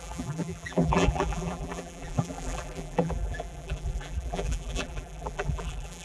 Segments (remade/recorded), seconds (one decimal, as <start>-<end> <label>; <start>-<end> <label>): 0.0-6.0 remade